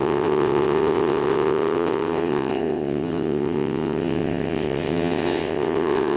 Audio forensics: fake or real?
fake